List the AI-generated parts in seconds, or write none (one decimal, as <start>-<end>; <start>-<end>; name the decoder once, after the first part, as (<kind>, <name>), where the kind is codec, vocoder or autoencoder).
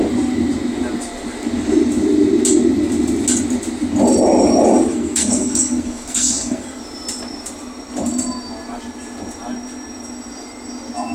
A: 4.9-6.8 (codec, SNAC)